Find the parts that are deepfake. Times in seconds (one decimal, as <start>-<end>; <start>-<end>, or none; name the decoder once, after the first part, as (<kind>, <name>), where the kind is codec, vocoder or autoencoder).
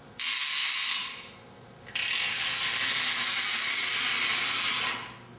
none